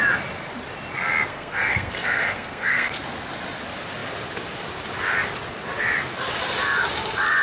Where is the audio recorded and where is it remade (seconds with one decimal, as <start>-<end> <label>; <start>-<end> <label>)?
0.0-1.3 recorded; 1.3-2.9 remade; 2.9-7.4 recorded